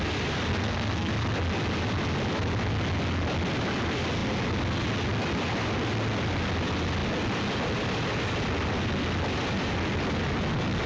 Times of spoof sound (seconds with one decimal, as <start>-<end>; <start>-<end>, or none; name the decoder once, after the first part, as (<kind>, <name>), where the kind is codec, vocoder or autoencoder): 0.5-1.1 (codec, SNAC)